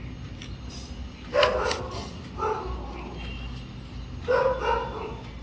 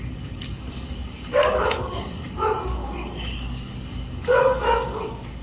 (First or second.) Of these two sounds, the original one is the first